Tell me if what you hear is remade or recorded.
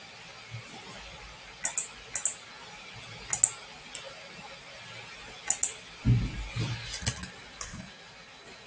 recorded